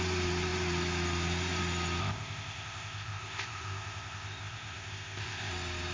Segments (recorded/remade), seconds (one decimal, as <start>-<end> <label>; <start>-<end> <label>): 0.0-2.0 recorded; 2.0-5.5 remade; 5.5-5.9 recorded